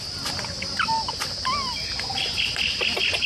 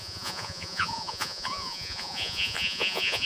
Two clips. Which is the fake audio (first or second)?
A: second